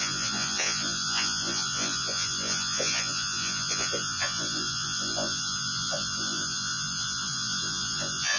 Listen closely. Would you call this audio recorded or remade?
remade